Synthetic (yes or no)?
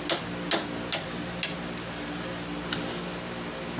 no